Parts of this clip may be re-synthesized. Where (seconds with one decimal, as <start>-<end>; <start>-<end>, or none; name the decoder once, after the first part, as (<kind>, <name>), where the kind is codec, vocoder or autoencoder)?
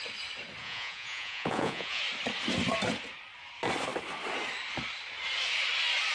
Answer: 0.6-2.0 (vocoder, Vocos)